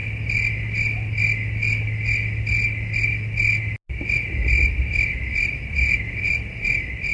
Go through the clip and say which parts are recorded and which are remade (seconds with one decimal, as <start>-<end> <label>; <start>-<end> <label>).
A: 0.0-7.1 recorded